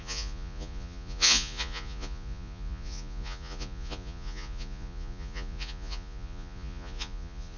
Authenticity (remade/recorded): remade